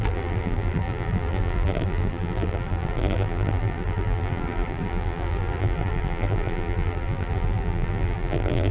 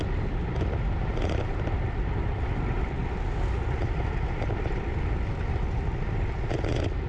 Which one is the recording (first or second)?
second